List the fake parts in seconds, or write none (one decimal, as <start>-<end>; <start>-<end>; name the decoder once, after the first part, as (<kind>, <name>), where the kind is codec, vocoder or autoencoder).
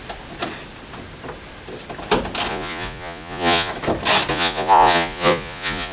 2.5-3.7 (vocoder, Vocos); 4.3-5.9